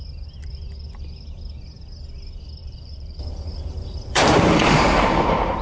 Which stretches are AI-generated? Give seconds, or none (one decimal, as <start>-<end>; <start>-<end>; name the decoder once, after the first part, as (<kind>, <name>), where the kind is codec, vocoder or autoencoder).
2.6-5.6 (vocoder, BigVGAN v2)